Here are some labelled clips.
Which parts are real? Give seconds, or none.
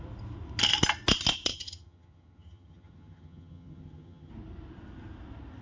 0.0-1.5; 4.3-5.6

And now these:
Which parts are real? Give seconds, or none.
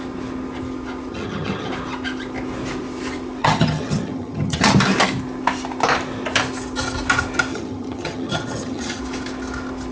0.0-1.1; 1.7-3.4; 4.7-7.5; 9.0-9.9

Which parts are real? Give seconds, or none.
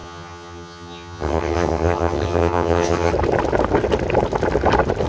3.1-5.1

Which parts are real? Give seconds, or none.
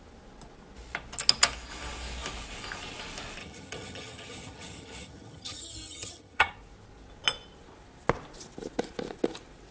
0.0-3.4; 6.5-9.7